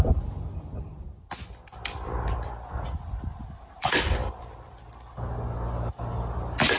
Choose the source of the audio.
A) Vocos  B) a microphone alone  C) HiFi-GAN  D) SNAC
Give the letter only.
B